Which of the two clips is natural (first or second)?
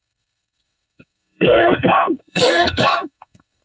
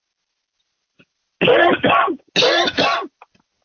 second